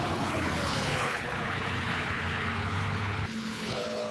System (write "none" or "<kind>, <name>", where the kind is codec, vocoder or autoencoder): codec, HILCodec